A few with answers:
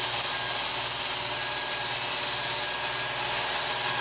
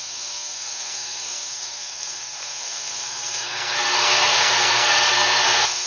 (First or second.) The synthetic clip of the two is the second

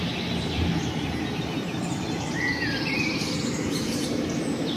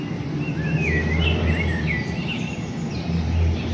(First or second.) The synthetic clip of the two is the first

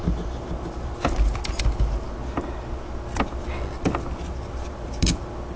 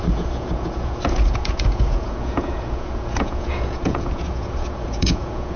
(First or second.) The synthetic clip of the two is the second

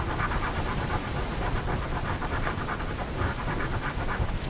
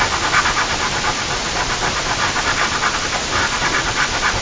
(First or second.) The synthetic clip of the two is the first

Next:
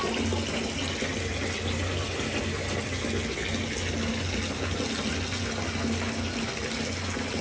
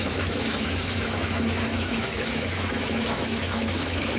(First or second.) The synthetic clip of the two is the second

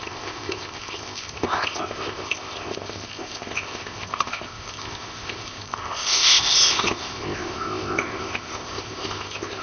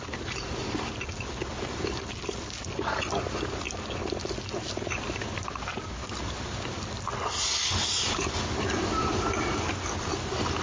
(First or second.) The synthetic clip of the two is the first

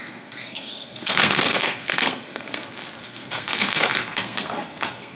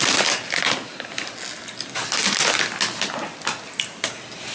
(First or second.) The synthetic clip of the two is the first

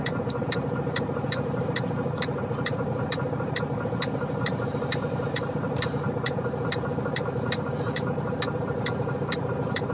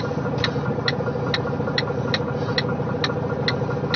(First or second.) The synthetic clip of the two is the first